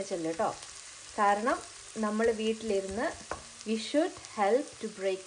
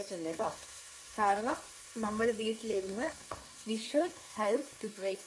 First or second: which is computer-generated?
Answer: second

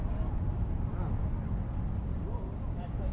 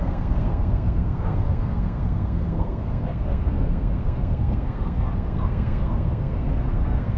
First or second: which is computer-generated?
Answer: second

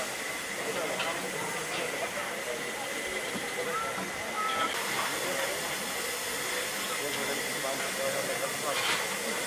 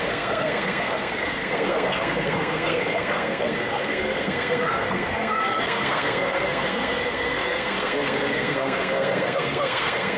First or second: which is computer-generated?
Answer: second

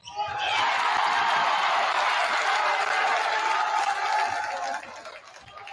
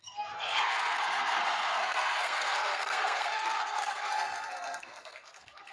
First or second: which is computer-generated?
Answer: second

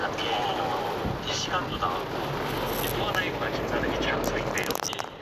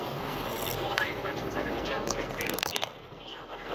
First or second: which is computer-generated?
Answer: second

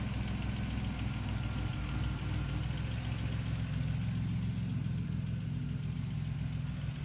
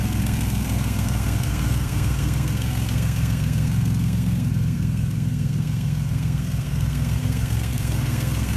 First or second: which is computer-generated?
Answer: second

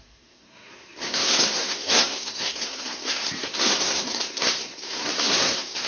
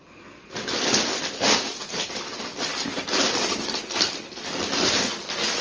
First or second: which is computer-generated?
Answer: first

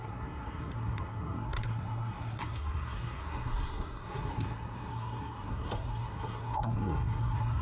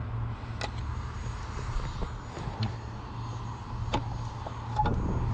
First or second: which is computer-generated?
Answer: first